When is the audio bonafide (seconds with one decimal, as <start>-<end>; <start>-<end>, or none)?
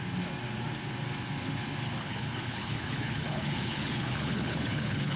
0.0-2.0